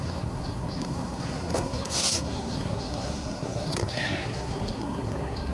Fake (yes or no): yes